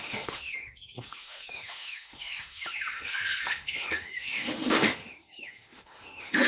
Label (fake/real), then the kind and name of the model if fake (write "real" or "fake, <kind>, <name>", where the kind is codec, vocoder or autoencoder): fake, autoencoder, DAC-VAE